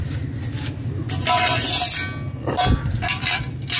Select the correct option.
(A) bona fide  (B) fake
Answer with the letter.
A